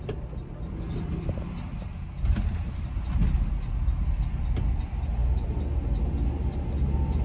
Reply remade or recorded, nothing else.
recorded